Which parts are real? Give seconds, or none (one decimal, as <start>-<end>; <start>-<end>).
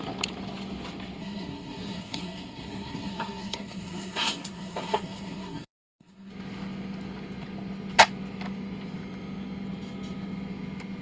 0.0-1.2; 6.3-11.0